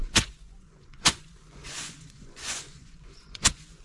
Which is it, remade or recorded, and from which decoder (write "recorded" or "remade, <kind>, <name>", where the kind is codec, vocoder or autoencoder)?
remade, vocoder, Vocos